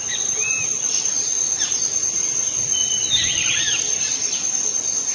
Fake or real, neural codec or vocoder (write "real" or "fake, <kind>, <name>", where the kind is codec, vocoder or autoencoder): real